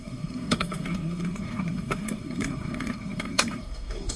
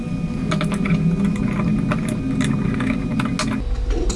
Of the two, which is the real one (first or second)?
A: second